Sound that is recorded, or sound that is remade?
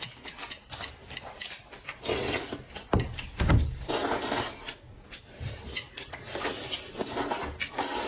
recorded